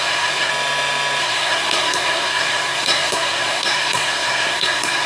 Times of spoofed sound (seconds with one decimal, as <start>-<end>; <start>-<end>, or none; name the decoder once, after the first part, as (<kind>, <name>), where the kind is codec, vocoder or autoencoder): 0.0-0.5 (codec, SNAC); 1.2-5.1